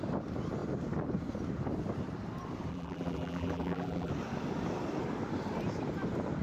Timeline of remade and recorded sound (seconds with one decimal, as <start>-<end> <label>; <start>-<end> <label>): 0.0-2.7 recorded; 2.7-4.1 remade; 4.1-6.4 recorded